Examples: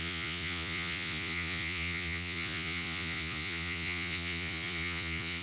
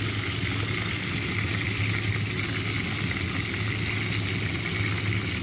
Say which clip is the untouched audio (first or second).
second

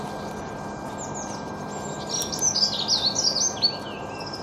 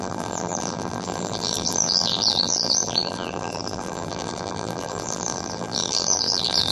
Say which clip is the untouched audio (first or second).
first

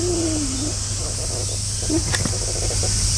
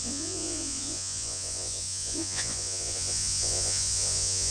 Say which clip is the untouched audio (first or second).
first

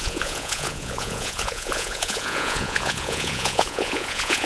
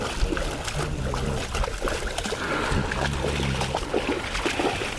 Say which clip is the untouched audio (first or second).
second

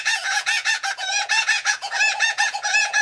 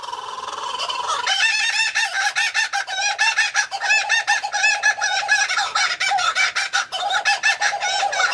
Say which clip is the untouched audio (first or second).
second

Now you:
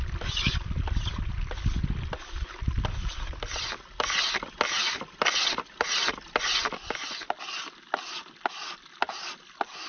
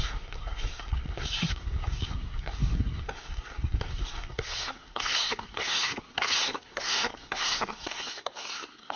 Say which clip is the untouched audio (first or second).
first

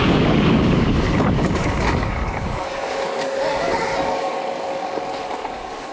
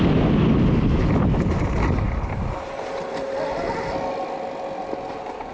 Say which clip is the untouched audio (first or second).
second